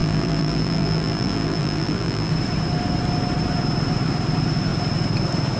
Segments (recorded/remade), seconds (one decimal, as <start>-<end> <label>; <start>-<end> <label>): 0.0-2.3 remade; 2.3-5.6 recorded